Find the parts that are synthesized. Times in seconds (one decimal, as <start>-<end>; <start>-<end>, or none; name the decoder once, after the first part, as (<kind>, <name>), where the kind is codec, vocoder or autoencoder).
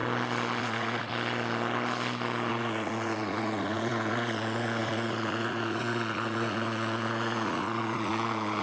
0.6-1.1 (vocoder, Vocos); 2.5-8.6